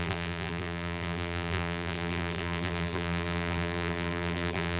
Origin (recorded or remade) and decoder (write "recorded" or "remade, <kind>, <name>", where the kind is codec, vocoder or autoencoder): remade, vocoder, BigVGAN v2